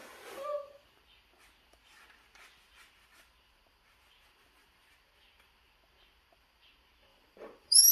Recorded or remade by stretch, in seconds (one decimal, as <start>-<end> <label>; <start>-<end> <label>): 0.0-1.0 remade; 1.0-7.1 recorded; 7.1-7.9 remade